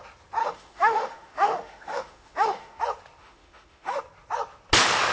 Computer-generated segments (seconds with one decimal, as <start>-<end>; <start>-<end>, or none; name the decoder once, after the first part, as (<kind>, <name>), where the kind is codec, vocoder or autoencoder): 0.4-2.8 (autoencoder, DAC-VAE); 3.2-4.0